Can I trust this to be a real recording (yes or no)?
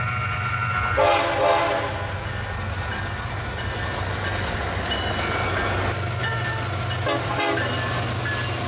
yes